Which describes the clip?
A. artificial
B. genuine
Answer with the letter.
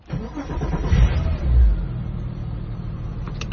A